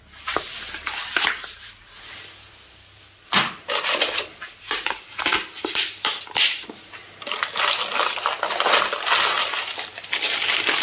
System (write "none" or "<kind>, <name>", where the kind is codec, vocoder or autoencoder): none